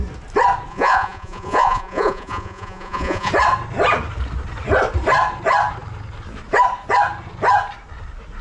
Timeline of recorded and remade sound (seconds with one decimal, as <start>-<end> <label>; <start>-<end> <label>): 0.0-0.7 recorded; 0.7-3.3 remade; 3.3-8.4 recorded